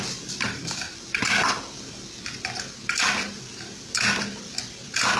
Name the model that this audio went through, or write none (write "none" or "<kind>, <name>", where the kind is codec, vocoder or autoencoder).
vocoder, BigVGAN v2